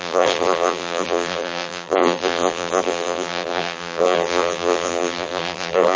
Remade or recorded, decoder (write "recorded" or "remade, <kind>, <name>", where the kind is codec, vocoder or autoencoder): remade, vocoder, BigVGAN v2